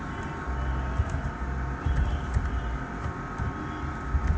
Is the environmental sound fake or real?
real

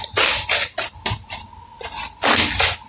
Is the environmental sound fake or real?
real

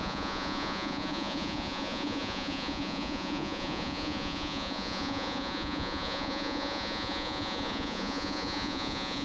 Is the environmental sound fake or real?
fake